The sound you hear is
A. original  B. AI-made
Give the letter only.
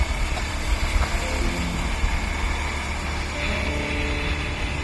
A